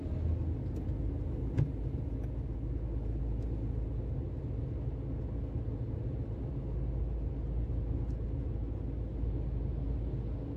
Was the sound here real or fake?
real